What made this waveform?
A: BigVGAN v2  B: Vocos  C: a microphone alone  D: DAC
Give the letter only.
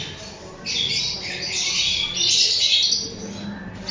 C